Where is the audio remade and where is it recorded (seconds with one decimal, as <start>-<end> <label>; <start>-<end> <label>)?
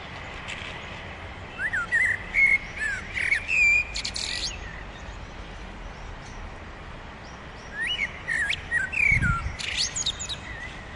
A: 0.0-2.4 recorded; 2.4-7.3 remade; 7.3-9.4 recorded; 9.4-11.0 remade